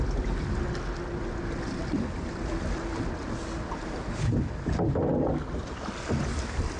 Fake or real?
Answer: real